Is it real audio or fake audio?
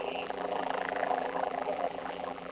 fake